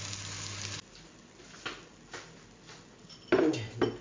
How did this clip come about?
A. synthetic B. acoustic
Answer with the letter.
B